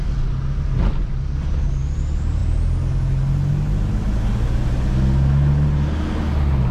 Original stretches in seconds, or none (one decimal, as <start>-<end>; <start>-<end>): 0.0-6.7